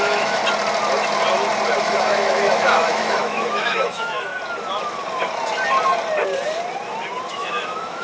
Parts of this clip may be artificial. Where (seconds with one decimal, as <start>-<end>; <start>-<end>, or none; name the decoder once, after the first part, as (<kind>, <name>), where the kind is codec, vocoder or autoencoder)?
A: 0.0-0.4 (autoencoder, DAC-VAE); 1.8-4.3; 7.3-8.0